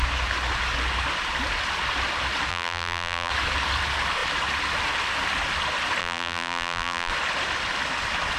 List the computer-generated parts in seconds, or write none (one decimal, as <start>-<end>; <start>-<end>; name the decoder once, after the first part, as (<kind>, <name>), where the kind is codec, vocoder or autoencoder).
2.5-3.3 (vocoder, BigVGAN v2); 6.0-7.1